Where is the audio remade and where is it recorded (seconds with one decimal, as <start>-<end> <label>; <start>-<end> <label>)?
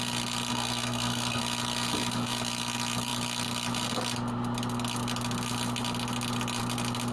0.0-0.5 recorded; 0.5-1.4 remade; 1.4-7.1 recorded